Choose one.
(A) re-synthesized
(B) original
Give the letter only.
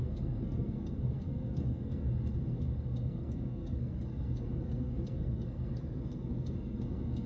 A